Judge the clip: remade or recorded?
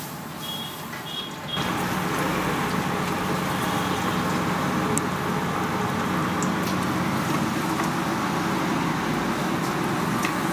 recorded